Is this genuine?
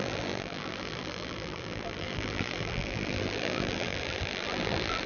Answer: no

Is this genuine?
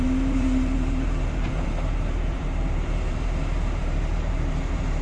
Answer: no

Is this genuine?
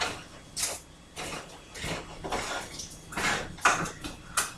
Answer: yes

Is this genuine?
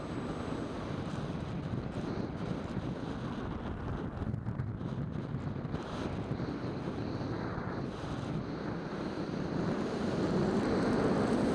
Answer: yes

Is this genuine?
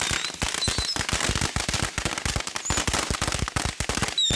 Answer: yes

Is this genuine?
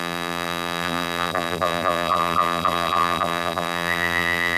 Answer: no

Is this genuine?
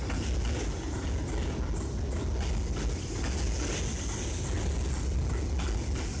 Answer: yes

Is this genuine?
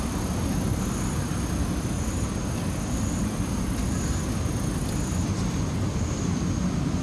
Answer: yes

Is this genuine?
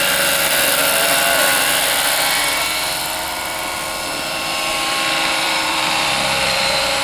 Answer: no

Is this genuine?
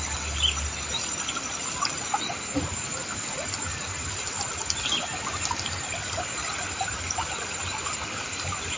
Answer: no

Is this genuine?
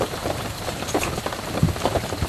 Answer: no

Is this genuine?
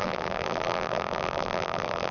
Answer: no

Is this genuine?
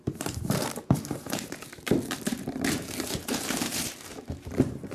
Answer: no